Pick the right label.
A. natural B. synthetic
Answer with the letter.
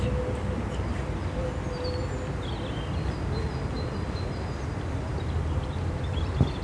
A